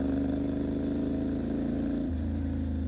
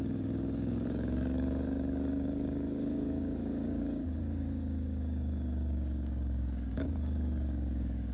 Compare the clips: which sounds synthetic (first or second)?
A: second